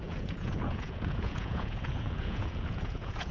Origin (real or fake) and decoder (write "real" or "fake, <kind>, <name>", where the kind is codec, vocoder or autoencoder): fake, vocoder, Vocos